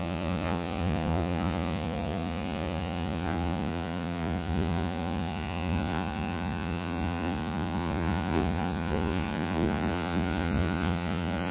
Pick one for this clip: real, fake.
fake